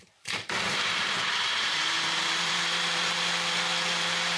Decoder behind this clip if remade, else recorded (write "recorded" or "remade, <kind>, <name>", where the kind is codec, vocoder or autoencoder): remade, vocoder, BigVGAN v2